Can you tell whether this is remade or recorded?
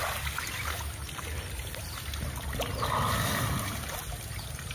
recorded